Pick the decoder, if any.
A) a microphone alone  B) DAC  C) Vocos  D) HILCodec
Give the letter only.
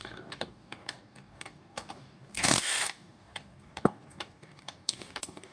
B